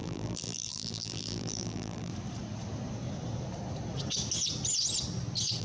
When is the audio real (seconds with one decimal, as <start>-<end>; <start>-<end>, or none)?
2.1-5.6